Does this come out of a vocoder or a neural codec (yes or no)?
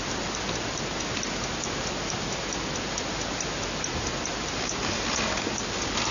no